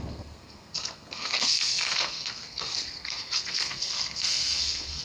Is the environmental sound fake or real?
fake